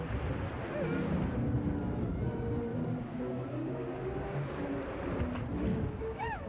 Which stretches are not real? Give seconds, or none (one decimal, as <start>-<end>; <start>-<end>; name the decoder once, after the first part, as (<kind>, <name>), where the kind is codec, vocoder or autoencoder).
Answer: 2.7-4.6 (codec, DAC); 5.7-6.5